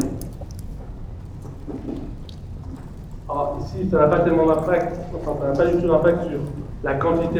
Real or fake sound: real